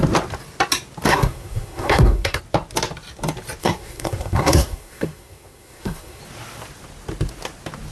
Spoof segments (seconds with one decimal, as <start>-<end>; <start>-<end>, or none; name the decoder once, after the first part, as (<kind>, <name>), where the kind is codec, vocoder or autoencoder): 1.1-2.4 (codec, SNAC); 3.6-6.2